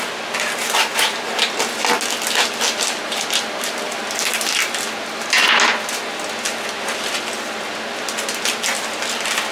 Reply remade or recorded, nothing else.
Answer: recorded